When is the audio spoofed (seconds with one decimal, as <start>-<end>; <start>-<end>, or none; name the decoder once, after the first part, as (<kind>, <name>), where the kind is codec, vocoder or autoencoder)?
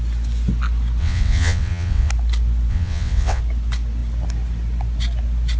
1.0-2.1 (vocoder, WaveNeXt); 2.7-3.4